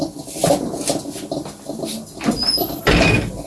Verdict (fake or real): real